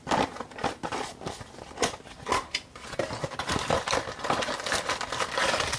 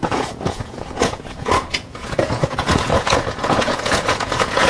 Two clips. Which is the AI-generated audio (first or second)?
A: second